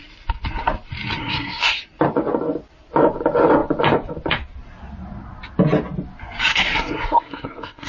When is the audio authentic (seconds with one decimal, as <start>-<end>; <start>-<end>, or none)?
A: 0.0-1.2; 1.8-6.5